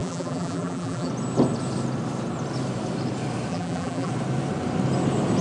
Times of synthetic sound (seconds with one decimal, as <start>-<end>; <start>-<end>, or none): 0.0-1.1; 3.5-4.1

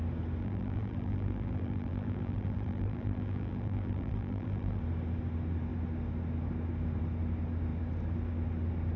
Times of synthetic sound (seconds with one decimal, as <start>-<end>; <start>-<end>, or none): 0.4-4.8

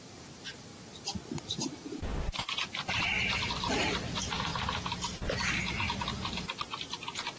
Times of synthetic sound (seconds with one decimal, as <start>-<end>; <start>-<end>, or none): 0.0-0.7; 1.3-2.1; 3.0-4.5

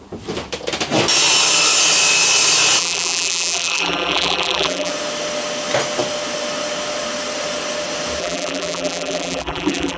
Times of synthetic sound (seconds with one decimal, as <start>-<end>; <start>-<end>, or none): 2.8-4.9; 8.2-10.0

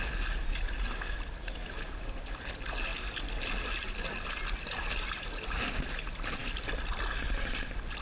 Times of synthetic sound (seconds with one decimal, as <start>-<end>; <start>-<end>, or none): none

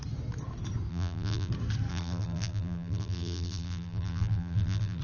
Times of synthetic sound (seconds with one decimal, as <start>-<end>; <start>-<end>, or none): 0.9-1.5; 1.9-5.0

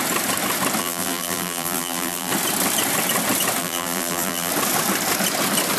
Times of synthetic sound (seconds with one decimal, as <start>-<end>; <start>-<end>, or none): 0.8-2.3; 3.6-4.5